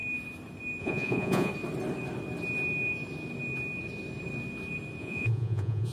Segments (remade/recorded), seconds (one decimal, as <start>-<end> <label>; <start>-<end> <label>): 0.0-0.8 recorded; 0.8-1.5 remade; 1.5-5.0 recorded; 5.0-5.9 remade